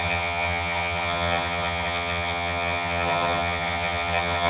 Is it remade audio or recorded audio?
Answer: remade